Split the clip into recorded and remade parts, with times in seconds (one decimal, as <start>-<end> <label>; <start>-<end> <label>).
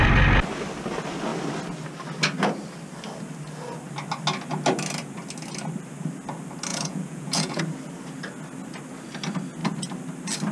0.0-6.7 recorded; 6.7-7.6 remade; 7.6-10.5 recorded